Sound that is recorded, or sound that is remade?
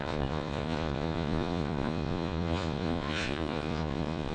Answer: remade